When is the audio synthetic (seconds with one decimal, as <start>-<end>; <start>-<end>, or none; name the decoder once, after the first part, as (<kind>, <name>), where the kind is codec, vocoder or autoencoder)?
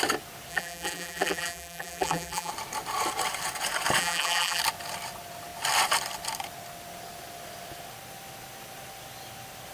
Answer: 0.5-2.5 (vocoder, BigVGAN v2); 4.0-4.6